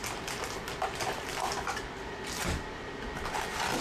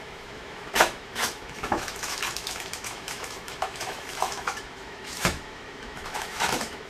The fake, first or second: second